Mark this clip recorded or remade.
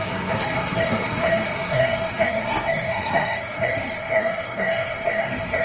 remade